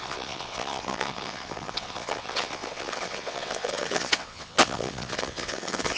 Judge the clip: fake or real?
fake